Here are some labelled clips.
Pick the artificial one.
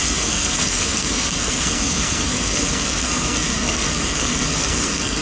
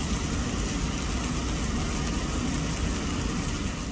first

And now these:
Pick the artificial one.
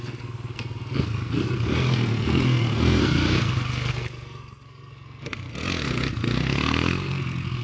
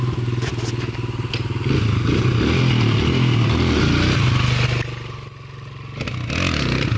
first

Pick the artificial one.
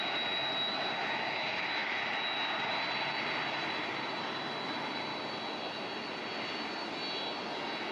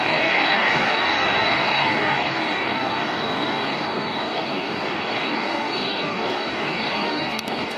second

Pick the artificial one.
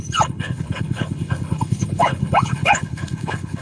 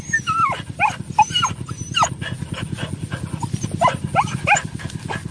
first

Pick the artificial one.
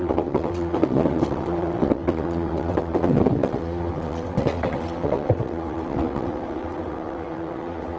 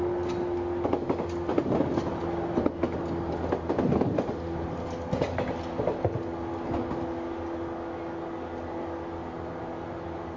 first